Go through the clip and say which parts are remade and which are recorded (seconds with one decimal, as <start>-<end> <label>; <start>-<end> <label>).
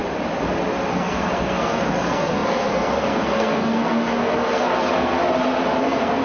0.0-0.9 recorded; 0.9-5.2 remade; 5.2-5.8 recorded; 5.8-6.2 remade